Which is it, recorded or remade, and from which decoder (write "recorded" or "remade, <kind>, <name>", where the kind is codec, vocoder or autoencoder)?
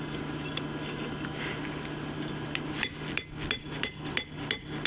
recorded